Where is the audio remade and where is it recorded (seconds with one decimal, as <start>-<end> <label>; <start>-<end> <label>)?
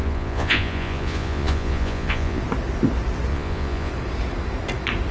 0.0-2.4 remade; 2.4-3.3 recorded; 3.3-3.9 remade; 3.9-5.1 recorded